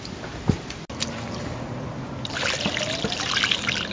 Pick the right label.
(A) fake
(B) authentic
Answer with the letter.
B